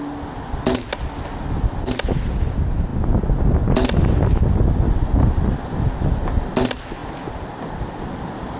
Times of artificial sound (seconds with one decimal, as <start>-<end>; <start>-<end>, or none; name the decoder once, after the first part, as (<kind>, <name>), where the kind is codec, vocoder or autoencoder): none